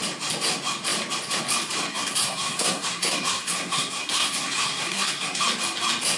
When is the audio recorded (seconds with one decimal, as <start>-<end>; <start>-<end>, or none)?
0.0-1.9; 5.4-6.2